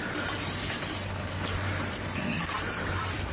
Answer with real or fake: fake